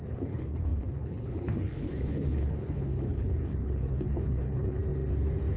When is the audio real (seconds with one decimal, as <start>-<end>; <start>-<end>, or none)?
4.8-5.6

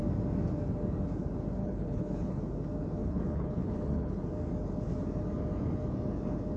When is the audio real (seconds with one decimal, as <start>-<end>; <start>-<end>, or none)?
0.0-1.6; 2.4-3.0; 4.2-6.6

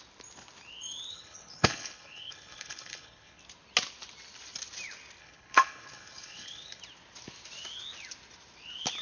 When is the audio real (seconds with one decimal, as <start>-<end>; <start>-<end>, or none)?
0.0-1.1; 3.4-5.2; 6.8-9.0

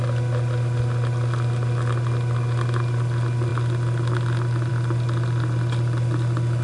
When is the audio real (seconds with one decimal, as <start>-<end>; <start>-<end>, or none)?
0.0-6.6

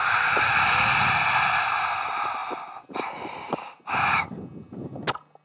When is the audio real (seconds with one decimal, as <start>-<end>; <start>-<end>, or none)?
0.0-5.4

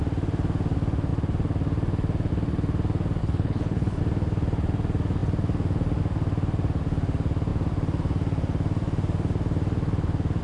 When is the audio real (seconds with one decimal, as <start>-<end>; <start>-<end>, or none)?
0.0-3.2; 4.0-10.4